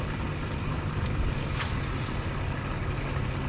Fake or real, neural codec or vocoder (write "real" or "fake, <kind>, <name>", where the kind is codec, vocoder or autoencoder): real